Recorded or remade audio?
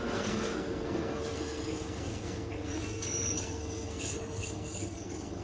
remade